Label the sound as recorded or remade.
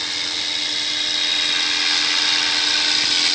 recorded